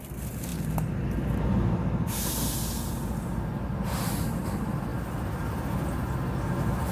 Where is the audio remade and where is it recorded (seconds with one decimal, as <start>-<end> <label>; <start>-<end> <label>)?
0.0-6.9 recorded

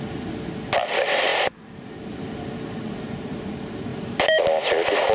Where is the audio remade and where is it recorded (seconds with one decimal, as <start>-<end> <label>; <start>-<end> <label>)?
0.0-1.3 recorded; 1.3-2.3 remade; 2.3-3.9 recorded; 3.9-4.4 remade; 4.4-5.1 recorded

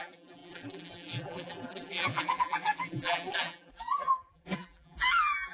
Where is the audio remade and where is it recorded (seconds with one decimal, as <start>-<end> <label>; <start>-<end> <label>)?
0.0-5.5 remade

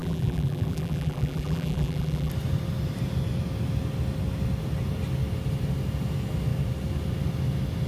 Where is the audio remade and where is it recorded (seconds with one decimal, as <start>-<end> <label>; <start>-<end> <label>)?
0.0-2.3 remade; 2.3-7.9 recorded

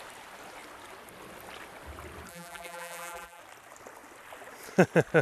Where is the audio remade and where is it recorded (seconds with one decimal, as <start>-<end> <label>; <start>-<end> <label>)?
0.0-2.3 recorded; 2.3-3.4 remade; 3.4-5.2 recorded